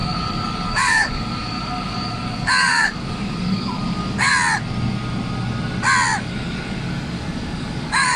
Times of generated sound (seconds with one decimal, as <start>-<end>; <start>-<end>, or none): 0.0-4.3; 6.2-8.2